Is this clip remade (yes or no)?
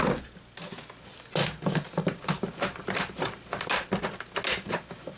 no